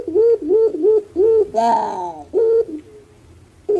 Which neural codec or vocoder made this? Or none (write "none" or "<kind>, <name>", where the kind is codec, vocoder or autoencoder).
none